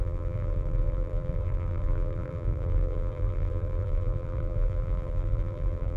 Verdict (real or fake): fake